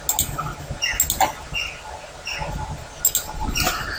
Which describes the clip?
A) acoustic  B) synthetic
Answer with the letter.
A